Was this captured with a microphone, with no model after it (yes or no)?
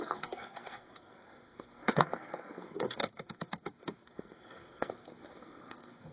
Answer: no